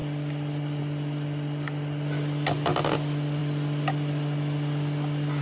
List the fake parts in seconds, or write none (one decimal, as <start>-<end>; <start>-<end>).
none